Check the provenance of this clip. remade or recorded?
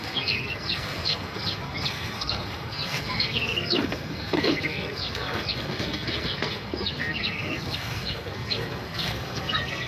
remade